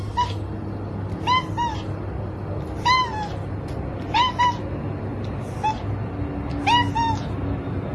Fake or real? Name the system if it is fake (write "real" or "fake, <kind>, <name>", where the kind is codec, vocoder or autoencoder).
real